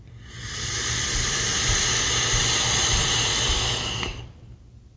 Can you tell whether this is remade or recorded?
recorded